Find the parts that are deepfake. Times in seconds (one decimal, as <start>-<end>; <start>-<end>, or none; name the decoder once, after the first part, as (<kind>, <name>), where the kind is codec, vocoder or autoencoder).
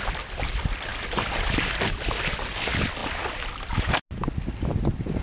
none